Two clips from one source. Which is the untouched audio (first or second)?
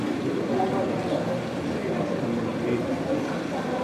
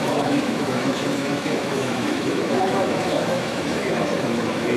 first